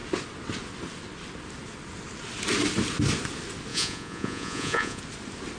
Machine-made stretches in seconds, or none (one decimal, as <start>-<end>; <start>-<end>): 3.7-5.0